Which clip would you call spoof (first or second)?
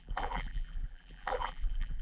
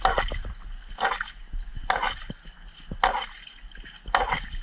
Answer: first